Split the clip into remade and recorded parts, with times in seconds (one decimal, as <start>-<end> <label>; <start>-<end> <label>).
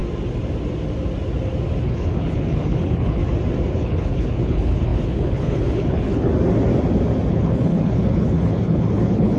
0.0-1.8 recorded; 1.8-3.2 remade; 3.2-3.7 recorded; 3.7-6.3 remade; 6.3-7.3 recorded; 7.3-9.4 remade